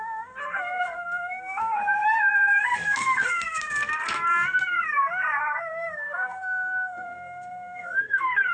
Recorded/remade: remade